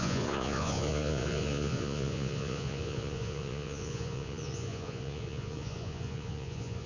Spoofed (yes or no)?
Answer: yes